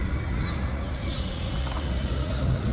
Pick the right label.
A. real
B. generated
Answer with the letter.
B